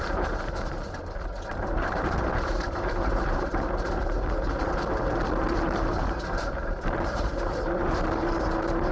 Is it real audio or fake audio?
fake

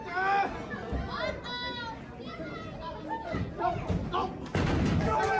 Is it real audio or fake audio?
real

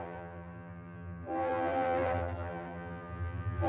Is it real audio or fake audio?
fake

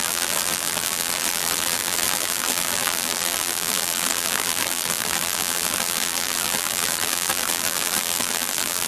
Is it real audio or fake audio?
fake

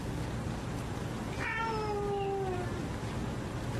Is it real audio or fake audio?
real